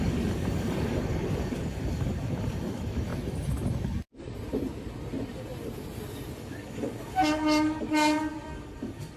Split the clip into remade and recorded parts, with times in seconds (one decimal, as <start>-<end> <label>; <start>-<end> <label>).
0.0-3.1 remade; 3.1-6.4 recorded; 6.4-9.2 remade